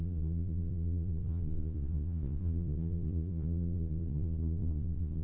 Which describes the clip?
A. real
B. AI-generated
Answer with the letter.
B